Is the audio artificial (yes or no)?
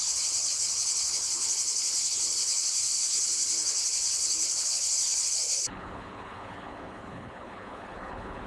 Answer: yes